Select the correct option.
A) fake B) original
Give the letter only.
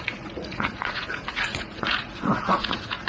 A